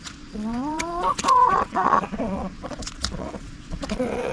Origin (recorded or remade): remade